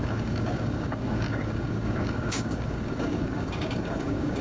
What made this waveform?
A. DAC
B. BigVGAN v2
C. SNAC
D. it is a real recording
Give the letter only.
A